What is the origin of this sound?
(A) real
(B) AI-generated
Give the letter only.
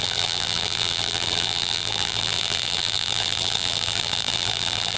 B